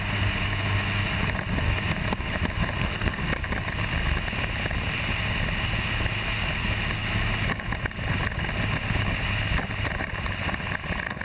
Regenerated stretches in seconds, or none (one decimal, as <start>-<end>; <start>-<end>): 2.8-3.3